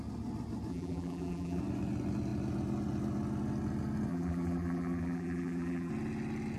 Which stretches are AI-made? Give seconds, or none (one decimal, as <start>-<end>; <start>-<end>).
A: 0.7-1.6; 4.1-5.9